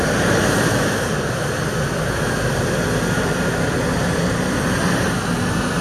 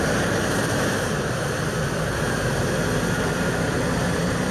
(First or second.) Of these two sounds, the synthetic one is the second